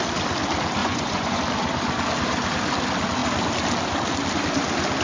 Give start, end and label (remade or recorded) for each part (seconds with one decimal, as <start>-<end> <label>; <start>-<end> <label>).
0.0-0.8 recorded; 0.8-1.4 remade; 1.4-5.0 recorded